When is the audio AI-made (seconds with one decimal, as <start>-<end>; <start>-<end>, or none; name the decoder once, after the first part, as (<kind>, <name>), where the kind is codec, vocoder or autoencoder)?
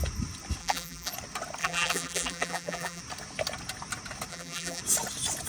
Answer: 0.6-1.1 (vocoder, BigVGAN v2); 1.6-3.0; 4.3-4.8